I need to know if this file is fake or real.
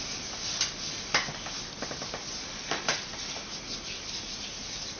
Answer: real